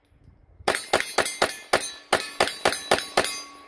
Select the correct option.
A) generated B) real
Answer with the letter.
B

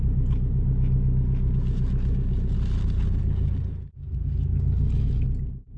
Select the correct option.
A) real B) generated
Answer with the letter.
A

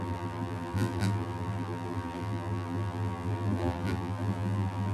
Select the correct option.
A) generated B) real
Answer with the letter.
A